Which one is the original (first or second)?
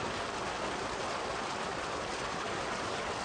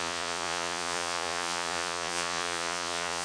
first